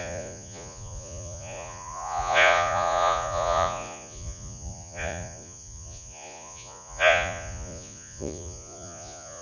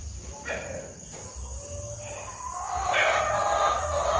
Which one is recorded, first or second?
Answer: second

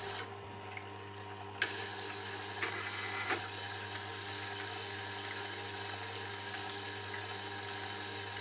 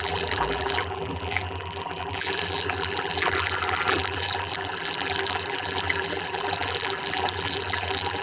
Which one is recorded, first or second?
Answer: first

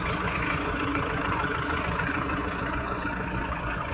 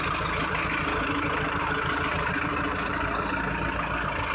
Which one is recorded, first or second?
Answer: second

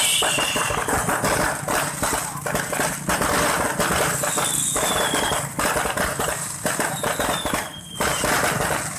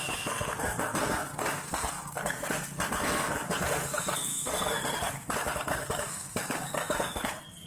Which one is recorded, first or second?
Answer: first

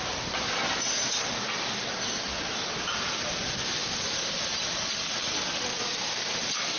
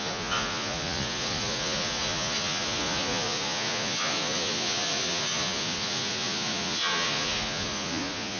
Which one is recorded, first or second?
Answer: first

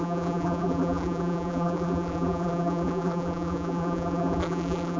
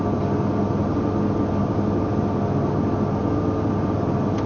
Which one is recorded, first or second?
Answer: second